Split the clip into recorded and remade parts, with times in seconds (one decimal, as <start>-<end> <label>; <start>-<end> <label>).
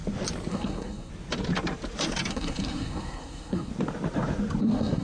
0.0-0.5 recorded; 0.5-1.1 remade; 1.1-2.3 recorded; 2.3-3.7 remade; 3.7-4.6 recorded; 4.6-5.0 remade